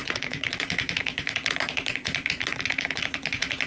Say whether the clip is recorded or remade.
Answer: remade